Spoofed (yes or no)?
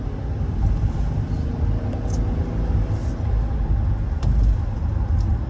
no